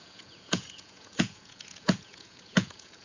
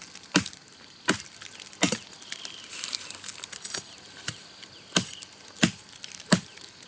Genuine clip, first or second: second